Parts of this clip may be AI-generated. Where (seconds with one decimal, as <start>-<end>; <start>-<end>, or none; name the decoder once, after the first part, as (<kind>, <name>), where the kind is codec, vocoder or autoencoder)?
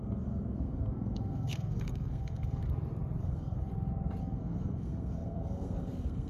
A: 0.0-2.6 (codec, SNAC); 3.2-3.7; 4.2-6.3